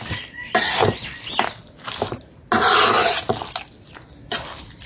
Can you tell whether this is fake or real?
real